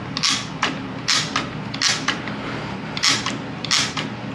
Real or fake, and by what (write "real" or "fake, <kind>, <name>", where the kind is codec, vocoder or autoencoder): real